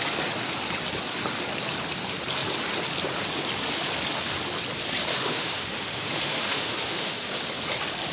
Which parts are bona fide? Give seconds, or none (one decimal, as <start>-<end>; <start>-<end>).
0.0-5.1; 7.3-8.1